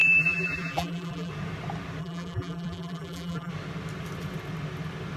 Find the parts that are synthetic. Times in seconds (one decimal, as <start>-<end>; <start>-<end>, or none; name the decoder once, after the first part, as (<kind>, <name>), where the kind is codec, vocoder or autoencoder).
0.0-1.3 (vocoder, BigVGAN v2); 2.0-3.5

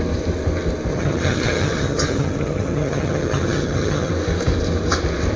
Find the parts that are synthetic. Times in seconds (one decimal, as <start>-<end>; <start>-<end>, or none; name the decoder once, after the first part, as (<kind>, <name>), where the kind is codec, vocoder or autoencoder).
0.9-4.1 (vocoder, HiFi-GAN)

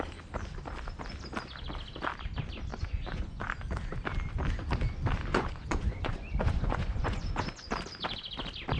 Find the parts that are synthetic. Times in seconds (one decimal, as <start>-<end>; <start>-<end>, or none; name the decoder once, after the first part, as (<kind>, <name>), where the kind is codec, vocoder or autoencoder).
2.7-3.6 (vocoder, Vocos); 5.3-7.7

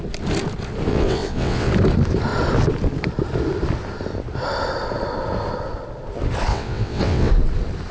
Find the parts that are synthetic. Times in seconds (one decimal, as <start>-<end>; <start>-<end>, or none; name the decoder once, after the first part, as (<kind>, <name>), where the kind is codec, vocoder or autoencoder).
0.9-1.7 (vocoder, WaveNeXt); 6.5-7.3

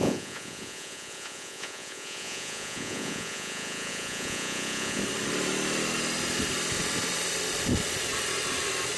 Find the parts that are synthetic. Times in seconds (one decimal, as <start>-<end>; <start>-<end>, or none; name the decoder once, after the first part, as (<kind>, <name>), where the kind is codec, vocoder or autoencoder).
0.0-5.0 (vocoder, Vocos)

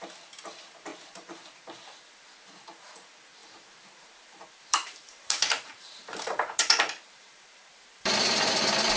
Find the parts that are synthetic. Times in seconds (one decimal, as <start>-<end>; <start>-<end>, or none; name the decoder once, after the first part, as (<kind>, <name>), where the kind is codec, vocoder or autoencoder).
3.4-8.5 (vocoder, BigVGAN v2)

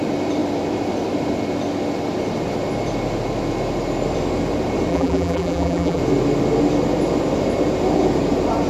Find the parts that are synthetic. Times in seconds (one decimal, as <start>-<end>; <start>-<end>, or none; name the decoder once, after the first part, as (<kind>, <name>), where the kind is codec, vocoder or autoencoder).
4.9-6.0 (vocoder, BigVGAN v2)